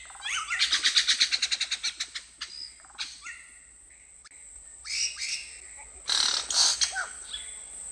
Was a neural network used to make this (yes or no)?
no